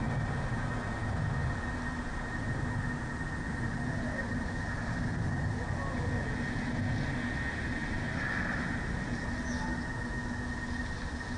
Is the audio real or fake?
real